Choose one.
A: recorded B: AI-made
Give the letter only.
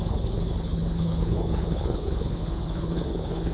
B